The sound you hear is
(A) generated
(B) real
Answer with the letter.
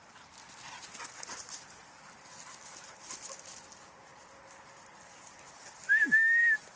B